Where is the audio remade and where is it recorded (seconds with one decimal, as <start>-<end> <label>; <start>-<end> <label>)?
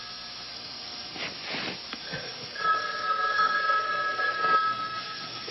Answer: 0.0-0.5 recorded; 0.5-1.2 remade; 1.2-1.9 recorded; 1.9-5.5 remade